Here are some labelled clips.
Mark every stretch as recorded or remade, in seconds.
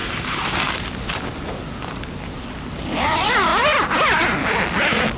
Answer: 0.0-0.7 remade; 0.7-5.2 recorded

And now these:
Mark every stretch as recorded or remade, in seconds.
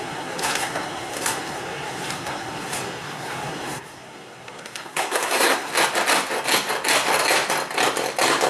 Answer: 0.0-5.7 remade; 5.7-8.5 recorded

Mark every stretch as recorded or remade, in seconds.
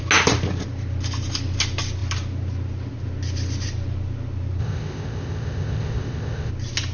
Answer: 0.0-4.6 recorded; 4.6-6.5 remade; 6.5-6.9 recorded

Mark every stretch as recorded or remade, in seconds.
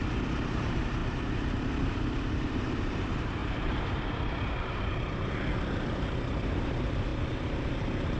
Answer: 0.0-8.2 remade